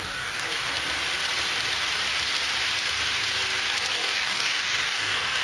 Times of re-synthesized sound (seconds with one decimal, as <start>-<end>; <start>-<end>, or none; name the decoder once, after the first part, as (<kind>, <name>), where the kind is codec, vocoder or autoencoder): 0.0-0.7 (codec, DAC); 3.9-5.4